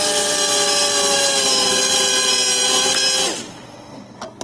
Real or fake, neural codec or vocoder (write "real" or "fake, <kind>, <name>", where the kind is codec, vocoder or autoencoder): real